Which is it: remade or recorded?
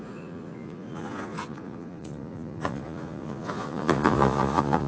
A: remade